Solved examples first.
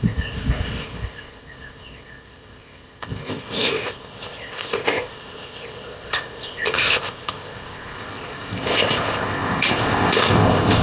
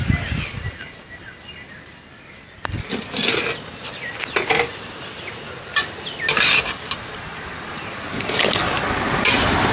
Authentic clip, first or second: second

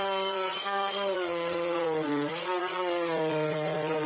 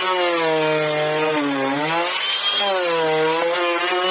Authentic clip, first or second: second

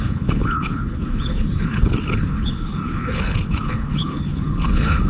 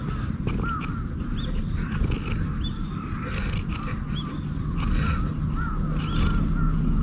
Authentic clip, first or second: second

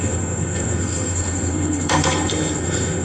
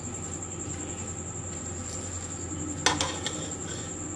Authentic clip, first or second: second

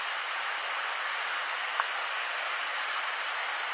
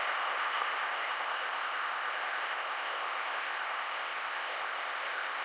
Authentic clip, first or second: first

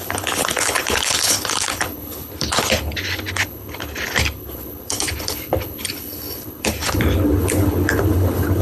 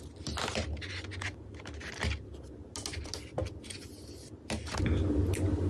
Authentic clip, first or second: second